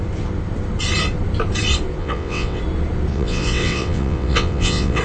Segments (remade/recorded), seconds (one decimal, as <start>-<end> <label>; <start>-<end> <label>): 0.0-2.0 recorded; 2.0-2.6 remade; 2.6-3.1 recorded; 3.1-5.0 remade